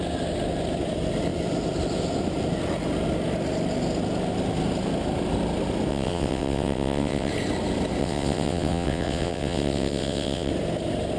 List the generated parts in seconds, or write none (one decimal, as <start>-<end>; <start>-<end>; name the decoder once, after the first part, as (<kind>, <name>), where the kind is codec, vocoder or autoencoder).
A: 5.9-7.3 (vocoder, WaveNeXt); 8.0-10.5